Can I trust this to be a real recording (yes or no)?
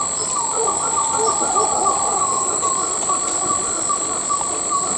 yes